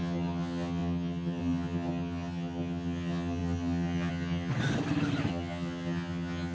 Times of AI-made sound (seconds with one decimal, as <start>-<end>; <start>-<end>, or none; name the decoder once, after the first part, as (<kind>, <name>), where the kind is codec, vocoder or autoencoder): 0.0-4.5 (vocoder, HiFi-GAN); 5.3-6.5